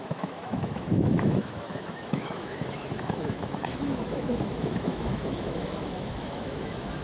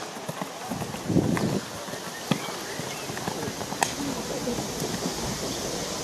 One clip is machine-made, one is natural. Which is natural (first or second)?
second